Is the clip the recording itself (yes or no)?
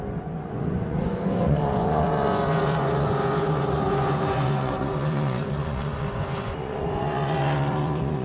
no